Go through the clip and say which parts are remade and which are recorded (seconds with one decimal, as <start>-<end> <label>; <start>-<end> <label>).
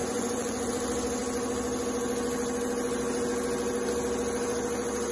0.0-0.7 remade; 0.7-5.1 recorded